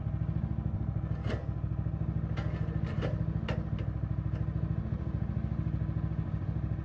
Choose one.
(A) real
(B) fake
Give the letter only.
A